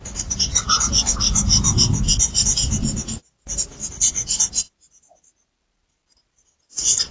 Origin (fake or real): real